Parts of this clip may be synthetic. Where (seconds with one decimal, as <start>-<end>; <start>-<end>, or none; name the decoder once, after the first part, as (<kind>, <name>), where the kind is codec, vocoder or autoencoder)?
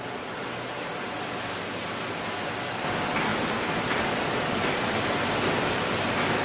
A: 3.3-5.5 (vocoder, BigVGAN v2)